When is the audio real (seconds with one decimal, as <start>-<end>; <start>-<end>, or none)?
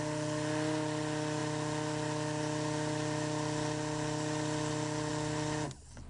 0.0-6.1